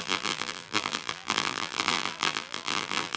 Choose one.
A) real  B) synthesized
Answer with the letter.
B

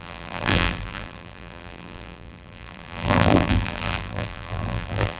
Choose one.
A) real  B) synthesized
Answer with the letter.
B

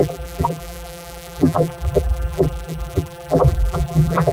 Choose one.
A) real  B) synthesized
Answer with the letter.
B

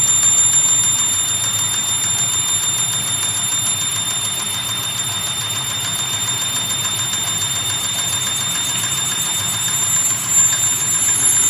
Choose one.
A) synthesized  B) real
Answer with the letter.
A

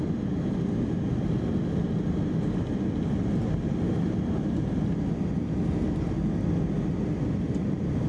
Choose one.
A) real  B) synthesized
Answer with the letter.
A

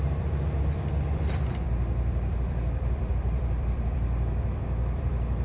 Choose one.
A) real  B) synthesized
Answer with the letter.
B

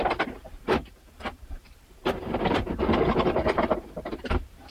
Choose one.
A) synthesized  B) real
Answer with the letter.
A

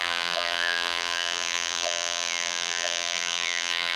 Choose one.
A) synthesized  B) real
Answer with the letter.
A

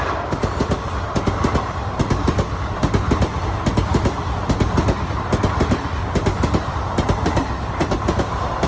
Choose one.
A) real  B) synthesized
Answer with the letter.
A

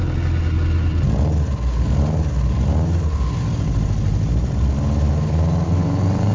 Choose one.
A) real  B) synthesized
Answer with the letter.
A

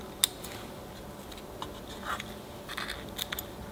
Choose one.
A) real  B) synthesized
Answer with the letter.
A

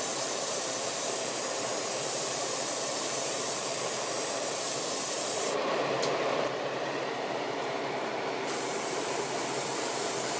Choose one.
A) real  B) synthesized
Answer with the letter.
B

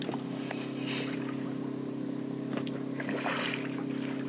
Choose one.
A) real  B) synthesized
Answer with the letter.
A